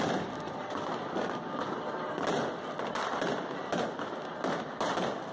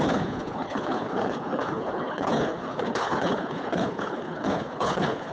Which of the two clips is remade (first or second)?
second